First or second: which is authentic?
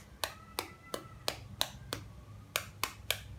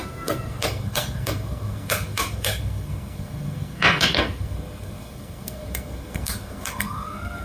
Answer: first